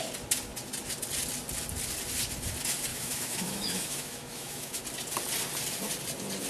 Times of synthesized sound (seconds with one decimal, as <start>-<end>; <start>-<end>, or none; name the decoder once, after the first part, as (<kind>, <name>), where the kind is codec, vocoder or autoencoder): 2.9-4.8 (autoencoder, DAC-VAE)